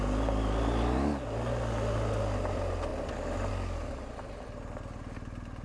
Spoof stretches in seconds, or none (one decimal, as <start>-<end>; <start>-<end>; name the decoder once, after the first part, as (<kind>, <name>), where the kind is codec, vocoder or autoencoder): none